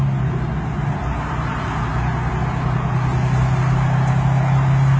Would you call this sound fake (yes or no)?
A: no